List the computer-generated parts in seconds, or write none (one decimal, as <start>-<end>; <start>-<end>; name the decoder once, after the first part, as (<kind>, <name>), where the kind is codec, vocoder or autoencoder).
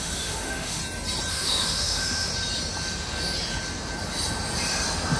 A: 0.0-0.8 (autoencoder, DAC-VAE); 1.3-2.3